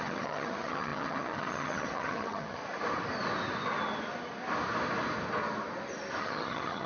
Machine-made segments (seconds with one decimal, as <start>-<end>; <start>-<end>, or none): 0.0-2.6; 6.2-6.9